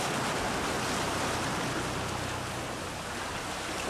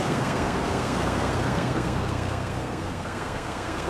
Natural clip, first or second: first